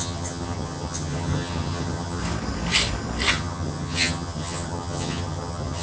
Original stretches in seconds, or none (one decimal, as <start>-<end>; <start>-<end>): 2.2-3.3